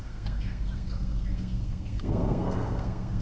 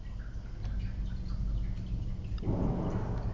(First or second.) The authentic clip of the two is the second